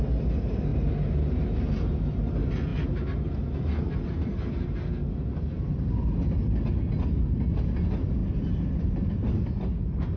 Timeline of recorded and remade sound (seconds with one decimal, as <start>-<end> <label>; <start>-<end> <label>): 0.0-10.2 recorded